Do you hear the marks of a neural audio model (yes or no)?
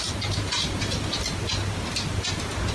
no